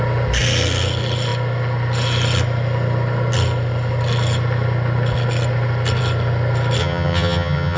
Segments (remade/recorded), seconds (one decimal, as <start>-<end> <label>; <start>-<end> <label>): 0.0-6.8 recorded; 6.8-7.8 remade